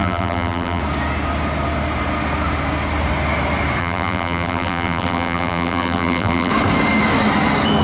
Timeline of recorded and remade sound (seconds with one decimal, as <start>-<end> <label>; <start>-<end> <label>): 0.0-0.8 remade; 0.8-3.8 recorded; 3.8-6.5 remade; 6.5-7.8 recorded